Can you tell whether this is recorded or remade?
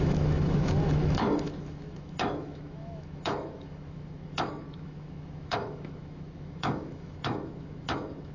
remade